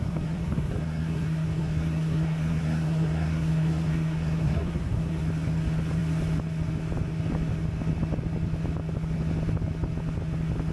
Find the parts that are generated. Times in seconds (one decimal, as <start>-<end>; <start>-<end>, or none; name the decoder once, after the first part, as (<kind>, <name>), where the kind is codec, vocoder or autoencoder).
0.0-5.2 (codec, SNAC)